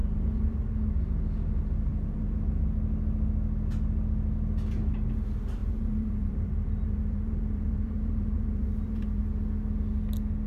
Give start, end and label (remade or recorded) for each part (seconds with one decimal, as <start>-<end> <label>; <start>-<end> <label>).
0.0-0.6 remade; 0.6-1.9 recorded; 1.9-2.6 remade; 2.6-5.6 recorded; 5.6-9.2 remade; 9.2-10.5 recorded